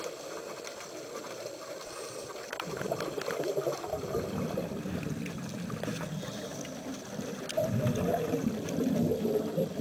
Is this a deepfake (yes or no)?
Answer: no